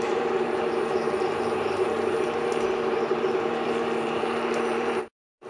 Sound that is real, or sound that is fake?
fake